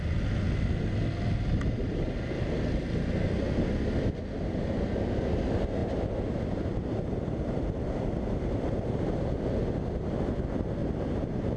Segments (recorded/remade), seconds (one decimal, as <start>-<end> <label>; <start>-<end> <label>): 0.0-1.8 recorded; 1.8-2.5 remade; 2.5-5.8 recorded; 5.8-9.2 remade; 9.2-10.8 recorded; 10.8-11.6 remade